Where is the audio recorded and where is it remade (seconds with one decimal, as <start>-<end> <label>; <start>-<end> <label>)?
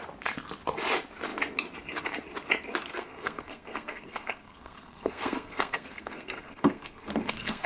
0.0-2.9 recorded; 2.9-7.7 remade